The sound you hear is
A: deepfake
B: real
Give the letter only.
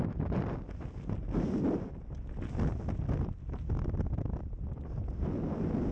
B